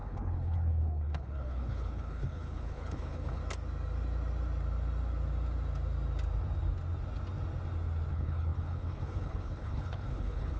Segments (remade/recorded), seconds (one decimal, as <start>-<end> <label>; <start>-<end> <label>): 0.0-3.4 remade; 3.4-8.1 recorded; 8.1-10.6 remade